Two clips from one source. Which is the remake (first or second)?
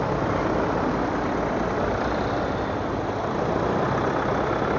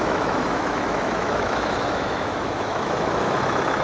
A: second